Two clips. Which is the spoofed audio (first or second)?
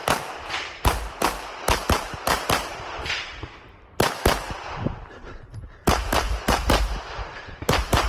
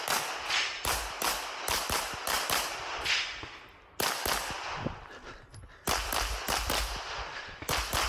first